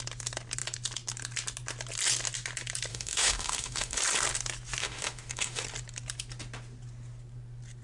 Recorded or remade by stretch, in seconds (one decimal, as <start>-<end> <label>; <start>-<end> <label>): 0.0-2.9 recorded; 2.9-4.0 remade; 4.0-4.8 recorded; 4.8-5.6 remade; 5.6-7.8 recorded